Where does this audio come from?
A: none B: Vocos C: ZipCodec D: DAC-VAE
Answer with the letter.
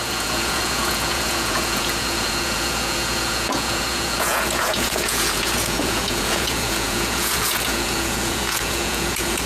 B